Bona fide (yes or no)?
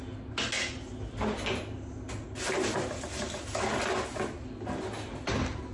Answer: yes